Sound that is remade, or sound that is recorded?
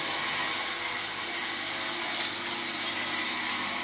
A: recorded